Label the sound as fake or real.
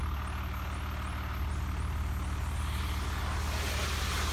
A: real